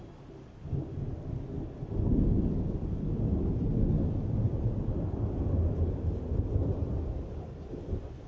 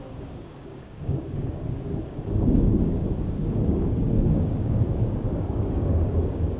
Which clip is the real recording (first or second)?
first